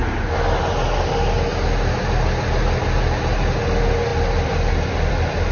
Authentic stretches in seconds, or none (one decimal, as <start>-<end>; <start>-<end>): 0.0-5.5

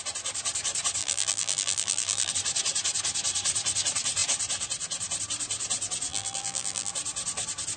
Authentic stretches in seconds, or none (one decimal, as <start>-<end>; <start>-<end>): 0.0-1.0; 2.3-6.1; 6.9-7.8

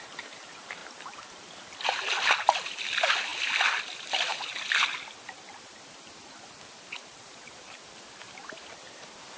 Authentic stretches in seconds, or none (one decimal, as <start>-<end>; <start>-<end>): 0.0-9.4

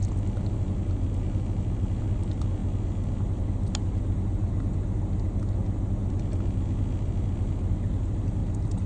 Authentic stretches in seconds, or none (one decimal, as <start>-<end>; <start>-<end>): 0.0-8.4

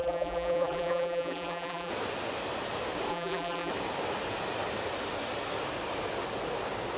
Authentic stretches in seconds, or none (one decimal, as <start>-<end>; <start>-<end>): 1.9-3.1; 3.7-7.0

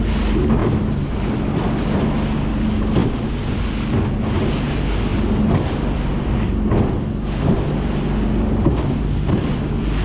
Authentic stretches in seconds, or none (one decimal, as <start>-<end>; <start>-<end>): 0.0-0.6; 1.2-5.1; 6.5-10.0

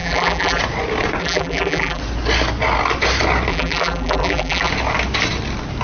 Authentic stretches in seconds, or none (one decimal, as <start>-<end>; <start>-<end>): 0.6-1.2; 2.0-3.5; 4.7-5.8